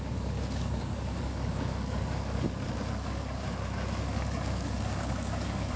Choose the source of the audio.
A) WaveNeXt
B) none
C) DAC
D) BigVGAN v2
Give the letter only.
C